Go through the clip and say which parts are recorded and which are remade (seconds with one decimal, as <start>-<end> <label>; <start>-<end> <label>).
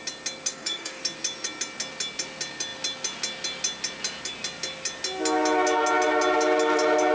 0.0-0.5 recorded; 0.5-1.0 remade; 1.0-7.1 recorded